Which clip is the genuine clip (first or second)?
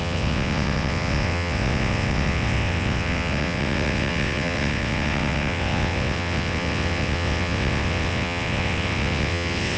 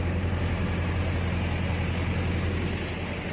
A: second